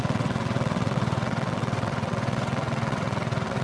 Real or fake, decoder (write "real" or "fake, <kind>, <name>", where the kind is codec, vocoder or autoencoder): fake, vocoder, WaveNeXt